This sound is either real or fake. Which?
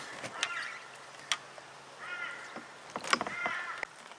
real